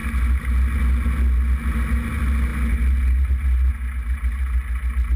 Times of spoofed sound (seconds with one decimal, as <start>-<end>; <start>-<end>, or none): none